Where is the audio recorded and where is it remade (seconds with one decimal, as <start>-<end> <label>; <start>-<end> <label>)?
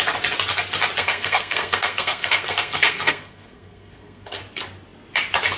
0.0-1.0 recorded; 1.0-4.4 remade; 4.4-5.6 recorded